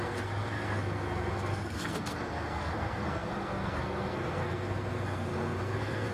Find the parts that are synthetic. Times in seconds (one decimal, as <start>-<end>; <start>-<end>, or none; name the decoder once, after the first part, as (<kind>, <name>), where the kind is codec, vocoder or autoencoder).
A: 0.0-6.1 (codec, SNAC)